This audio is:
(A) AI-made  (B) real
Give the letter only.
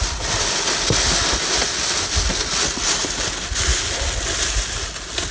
B